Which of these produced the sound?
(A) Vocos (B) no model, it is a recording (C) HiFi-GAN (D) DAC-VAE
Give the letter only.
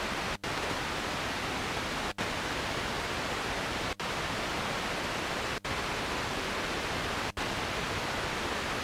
B